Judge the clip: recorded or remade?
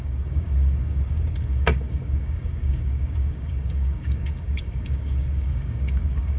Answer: remade